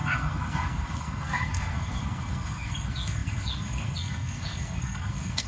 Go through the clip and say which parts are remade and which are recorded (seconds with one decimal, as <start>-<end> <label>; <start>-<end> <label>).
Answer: 0.0-5.5 remade